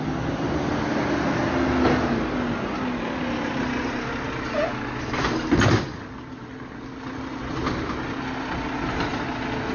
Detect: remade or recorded recorded